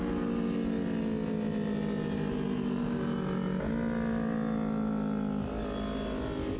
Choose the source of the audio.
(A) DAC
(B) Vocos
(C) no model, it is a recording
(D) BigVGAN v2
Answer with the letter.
C